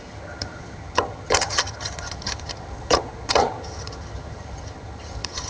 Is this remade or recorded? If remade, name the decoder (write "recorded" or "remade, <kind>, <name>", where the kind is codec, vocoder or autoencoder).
remade, vocoder, HiFi-GAN